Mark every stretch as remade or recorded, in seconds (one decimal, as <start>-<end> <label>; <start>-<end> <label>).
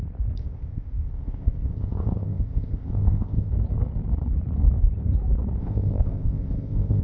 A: 0.0-0.4 recorded; 0.4-3.5 remade; 3.5-5.6 recorded; 5.6-7.0 remade